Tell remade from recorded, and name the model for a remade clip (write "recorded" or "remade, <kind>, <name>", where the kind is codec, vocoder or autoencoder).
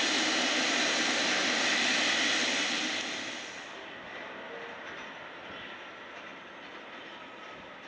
recorded